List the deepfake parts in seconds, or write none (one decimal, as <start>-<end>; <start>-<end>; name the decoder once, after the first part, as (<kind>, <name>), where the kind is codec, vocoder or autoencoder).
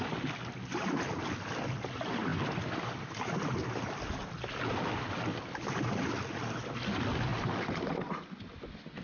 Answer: 7.3-8.1 (vocoder, BigVGAN v2)